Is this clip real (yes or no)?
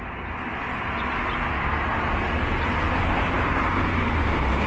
yes